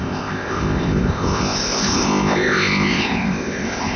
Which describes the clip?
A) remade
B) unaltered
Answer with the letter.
A